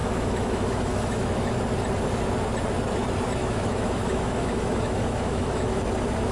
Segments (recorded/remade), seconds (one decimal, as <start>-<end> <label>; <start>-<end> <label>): 0.0-1.5 remade; 1.5-3.4 recorded; 3.4-5.8 remade; 5.8-6.3 recorded